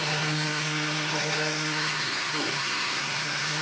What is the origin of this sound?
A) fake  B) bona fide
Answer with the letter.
A